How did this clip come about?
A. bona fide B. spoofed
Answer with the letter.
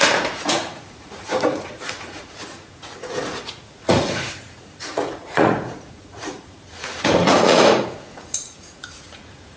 B